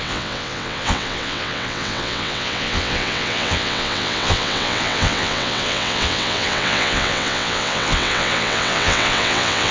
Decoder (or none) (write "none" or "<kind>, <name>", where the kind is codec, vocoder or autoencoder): vocoder, WaveNeXt